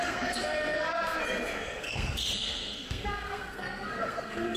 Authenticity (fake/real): fake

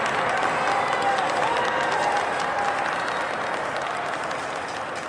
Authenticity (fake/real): real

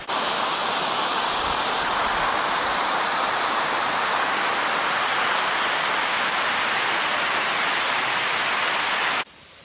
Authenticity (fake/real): real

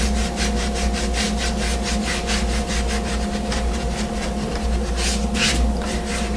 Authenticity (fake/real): real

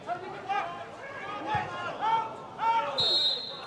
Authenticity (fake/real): real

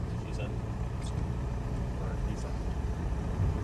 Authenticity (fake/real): fake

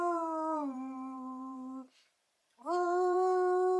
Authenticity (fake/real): fake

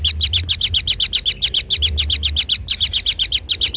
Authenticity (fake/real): real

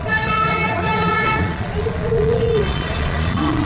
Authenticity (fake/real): fake